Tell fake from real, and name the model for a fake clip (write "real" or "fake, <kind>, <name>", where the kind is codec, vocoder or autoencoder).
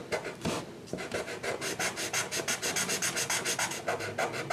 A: real